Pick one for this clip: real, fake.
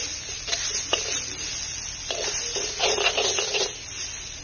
real